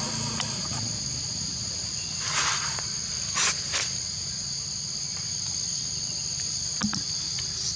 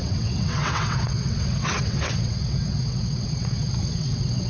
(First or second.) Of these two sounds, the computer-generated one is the second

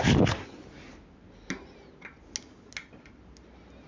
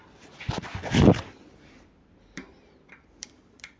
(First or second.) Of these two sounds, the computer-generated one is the second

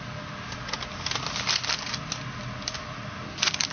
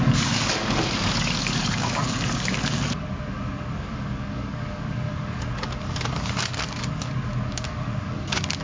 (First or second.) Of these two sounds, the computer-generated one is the second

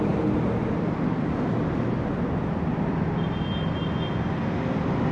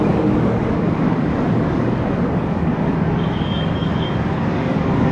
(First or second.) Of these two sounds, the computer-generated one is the second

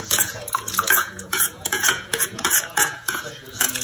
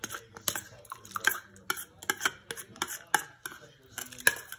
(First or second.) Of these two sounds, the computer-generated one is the first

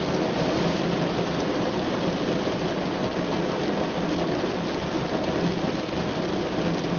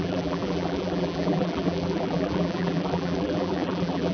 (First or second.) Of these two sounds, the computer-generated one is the second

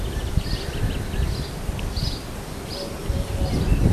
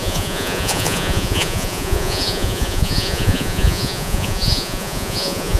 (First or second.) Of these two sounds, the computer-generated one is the second